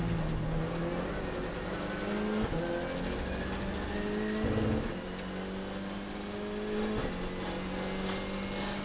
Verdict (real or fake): real